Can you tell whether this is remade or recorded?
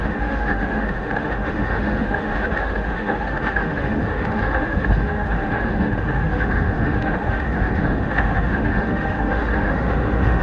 remade